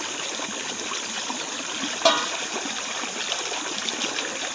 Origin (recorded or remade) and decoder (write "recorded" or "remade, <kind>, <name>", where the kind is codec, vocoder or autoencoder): recorded